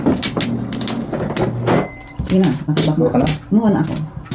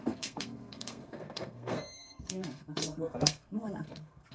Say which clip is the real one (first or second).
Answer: first